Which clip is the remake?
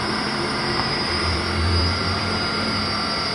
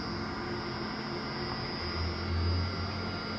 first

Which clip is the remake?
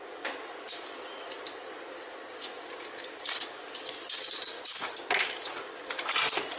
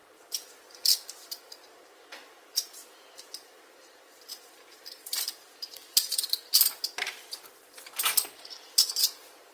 second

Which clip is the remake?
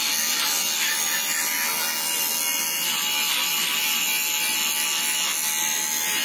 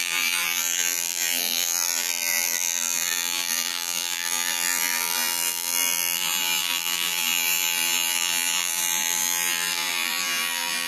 second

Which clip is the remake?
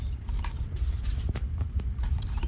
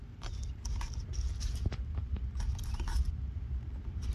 first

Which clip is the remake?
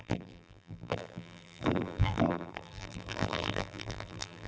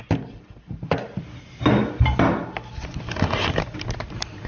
first